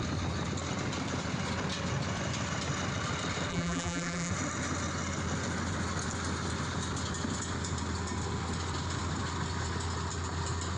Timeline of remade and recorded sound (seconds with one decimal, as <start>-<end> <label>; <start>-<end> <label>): 0.0-3.5 recorded; 3.5-4.3 remade; 4.3-10.8 recorded